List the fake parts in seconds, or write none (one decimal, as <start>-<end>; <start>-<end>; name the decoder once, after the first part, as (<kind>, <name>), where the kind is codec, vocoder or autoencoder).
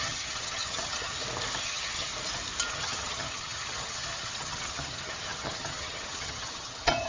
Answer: 0.0-1.1 (vocoder, HiFi-GAN); 1.6-2.1; 2.7-7.1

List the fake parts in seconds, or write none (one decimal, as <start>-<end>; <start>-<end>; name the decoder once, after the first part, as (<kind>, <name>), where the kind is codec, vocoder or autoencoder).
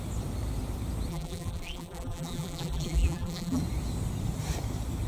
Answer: 1.1-3.6 (vocoder, BigVGAN v2)